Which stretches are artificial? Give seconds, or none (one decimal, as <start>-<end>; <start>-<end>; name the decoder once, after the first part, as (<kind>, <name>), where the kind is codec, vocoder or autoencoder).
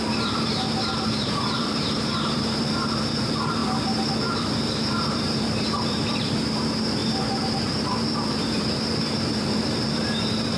0.0-3.6 (vocoder, BigVGAN v2); 4.4-10.6